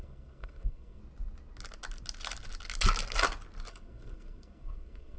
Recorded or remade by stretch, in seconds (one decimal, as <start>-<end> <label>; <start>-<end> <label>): 0.0-1.0 remade; 1.0-3.7 recorded; 3.7-5.2 remade